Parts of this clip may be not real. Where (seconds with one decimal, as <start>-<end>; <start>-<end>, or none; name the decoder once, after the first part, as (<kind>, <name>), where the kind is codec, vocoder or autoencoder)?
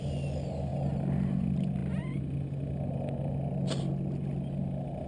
none